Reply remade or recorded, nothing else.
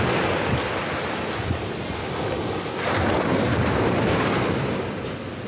recorded